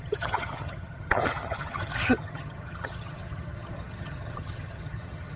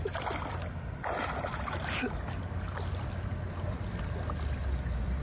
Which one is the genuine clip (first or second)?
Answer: second